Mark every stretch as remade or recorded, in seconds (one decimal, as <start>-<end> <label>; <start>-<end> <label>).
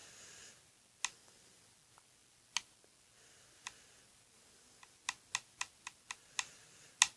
0.0-7.2 recorded